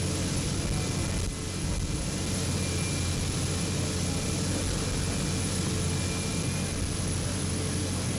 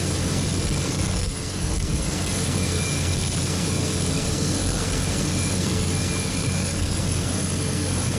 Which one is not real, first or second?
second